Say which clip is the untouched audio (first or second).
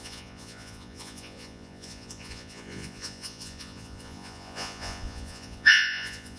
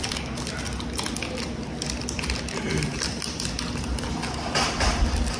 second